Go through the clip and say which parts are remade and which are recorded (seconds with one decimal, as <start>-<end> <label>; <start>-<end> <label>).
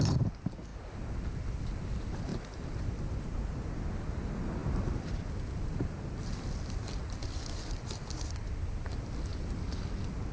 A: 0.0-0.7 recorded; 0.7-1.6 remade; 1.6-2.3 recorded; 2.3-3.8 remade; 3.8-4.6 recorded; 4.6-8.6 remade; 8.6-9.3 recorded; 9.3-9.9 remade; 9.9-10.3 recorded